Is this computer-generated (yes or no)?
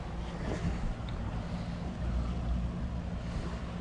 no